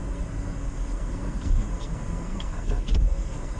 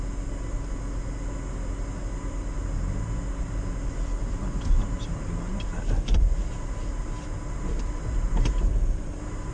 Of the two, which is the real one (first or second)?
second